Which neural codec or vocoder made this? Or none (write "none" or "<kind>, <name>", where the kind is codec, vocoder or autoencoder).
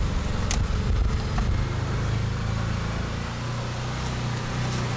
none